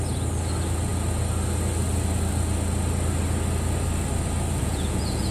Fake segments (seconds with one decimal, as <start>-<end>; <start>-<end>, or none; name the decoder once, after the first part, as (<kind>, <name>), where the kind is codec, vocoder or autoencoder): 4.6-5.3 (vocoder, Vocos)